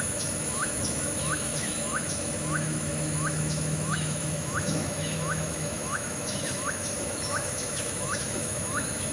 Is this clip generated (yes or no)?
yes